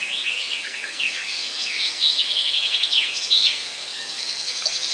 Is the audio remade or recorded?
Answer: remade